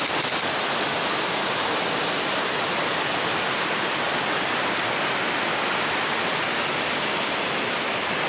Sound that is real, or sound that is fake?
real